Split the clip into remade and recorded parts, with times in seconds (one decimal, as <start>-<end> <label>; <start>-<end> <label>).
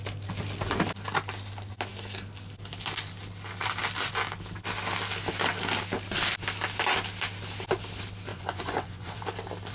0.0-8.3 recorded; 8.3-9.2 remade; 9.2-9.7 recorded